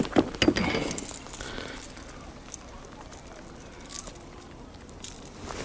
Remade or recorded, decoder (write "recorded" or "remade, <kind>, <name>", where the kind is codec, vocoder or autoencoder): recorded